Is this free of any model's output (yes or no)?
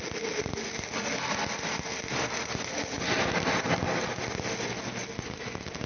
yes